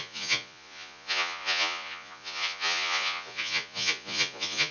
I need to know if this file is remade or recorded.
remade